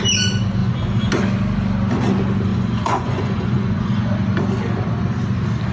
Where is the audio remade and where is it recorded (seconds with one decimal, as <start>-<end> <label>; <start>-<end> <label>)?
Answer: 0.0-0.6 recorded; 0.6-1.1 remade; 1.1-2.5 recorded; 2.5-4.1 remade; 4.1-5.7 recorded